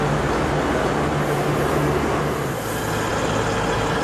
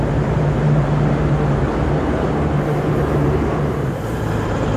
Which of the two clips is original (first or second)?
first